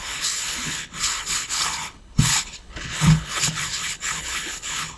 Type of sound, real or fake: fake